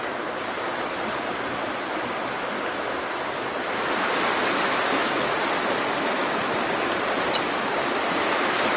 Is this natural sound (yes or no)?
yes